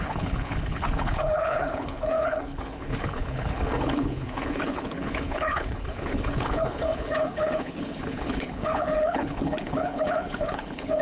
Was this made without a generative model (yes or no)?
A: no